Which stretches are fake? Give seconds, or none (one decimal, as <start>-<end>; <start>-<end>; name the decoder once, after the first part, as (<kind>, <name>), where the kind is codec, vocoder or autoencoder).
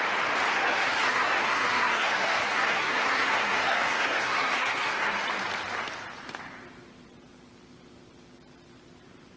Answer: 0.5-5.2 (codec, SNAC)